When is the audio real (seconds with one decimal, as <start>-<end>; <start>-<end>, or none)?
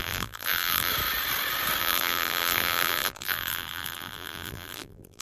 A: 0.9-1.8